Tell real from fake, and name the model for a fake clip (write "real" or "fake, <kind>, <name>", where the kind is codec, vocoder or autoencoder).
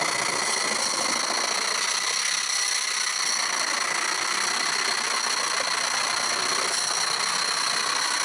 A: real